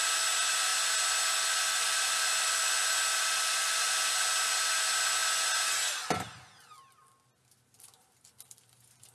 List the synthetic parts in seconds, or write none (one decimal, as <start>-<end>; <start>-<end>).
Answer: none